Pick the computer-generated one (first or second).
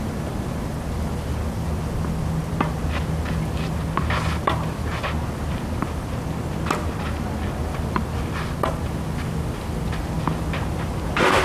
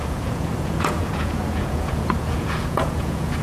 second